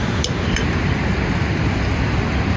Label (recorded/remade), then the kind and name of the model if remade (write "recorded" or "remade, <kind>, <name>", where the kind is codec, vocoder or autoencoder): recorded